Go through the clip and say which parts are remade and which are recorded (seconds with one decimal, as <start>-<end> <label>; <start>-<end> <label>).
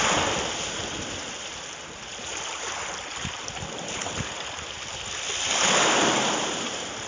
0.0-7.1 recorded